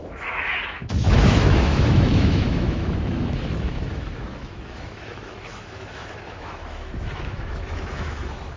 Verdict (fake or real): fake